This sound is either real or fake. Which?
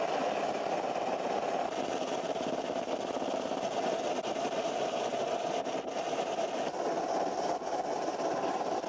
real